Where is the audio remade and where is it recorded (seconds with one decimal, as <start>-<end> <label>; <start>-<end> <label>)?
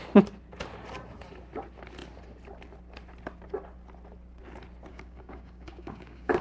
0.0-4.9 recorded; 4.9-6.4 remade